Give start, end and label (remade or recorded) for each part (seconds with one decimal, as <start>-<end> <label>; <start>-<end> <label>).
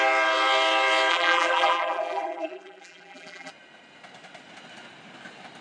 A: 0.0-1.1 recorded; 1.1-3.5 remade; 3.5-5.6 recorded